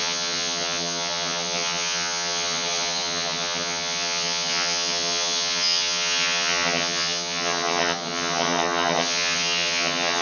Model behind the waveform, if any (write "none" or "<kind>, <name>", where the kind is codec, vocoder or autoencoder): vocoder, HiFi-GAN